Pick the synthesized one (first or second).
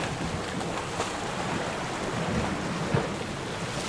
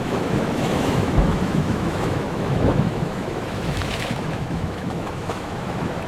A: second